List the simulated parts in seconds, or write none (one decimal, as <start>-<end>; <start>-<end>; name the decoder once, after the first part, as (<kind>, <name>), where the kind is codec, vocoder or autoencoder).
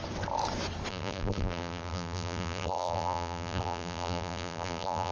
0.9-5.1 (vocoder, BigVGAN v2)